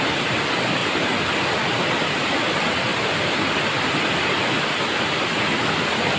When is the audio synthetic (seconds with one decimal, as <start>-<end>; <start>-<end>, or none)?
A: none